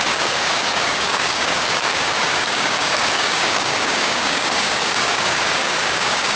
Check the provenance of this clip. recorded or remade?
remade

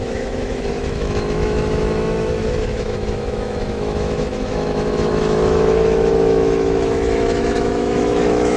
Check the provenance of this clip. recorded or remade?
remade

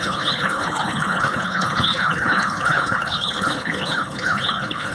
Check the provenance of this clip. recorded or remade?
remade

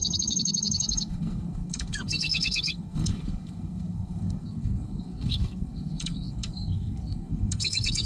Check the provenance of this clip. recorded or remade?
remade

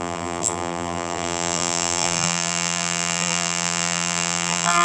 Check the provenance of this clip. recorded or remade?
remade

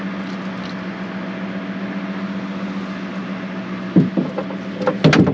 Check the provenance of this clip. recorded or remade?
recorded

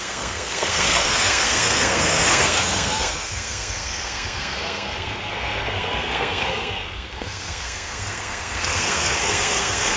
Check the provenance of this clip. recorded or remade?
remade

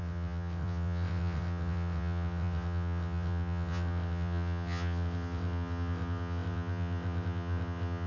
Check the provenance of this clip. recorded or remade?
remade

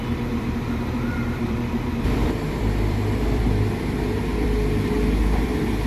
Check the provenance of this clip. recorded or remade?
remade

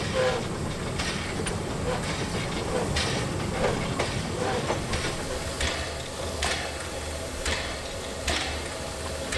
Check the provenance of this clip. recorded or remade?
recorded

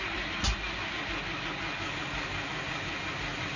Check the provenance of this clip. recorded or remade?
recorded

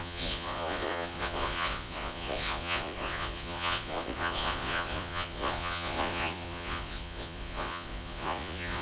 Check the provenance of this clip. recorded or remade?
remade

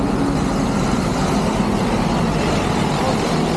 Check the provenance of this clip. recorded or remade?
recorded